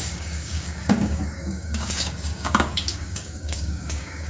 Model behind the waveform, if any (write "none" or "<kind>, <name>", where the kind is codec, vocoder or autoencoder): codec, DAC